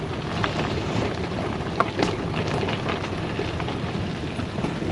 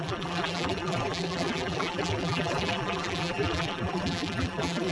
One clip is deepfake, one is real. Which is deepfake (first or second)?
second